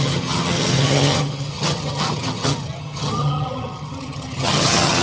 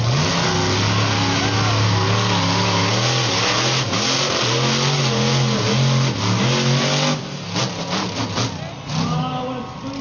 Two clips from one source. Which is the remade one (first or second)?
first